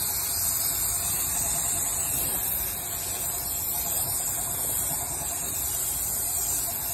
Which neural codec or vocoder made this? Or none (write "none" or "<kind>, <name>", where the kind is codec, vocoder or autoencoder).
none